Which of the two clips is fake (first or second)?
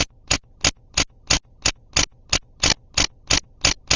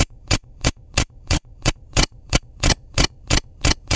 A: second